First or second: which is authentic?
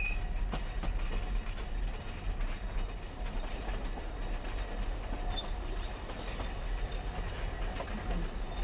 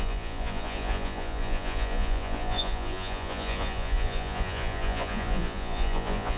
first